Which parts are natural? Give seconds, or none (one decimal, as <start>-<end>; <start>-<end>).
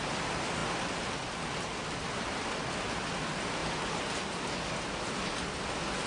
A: 0.0-6.1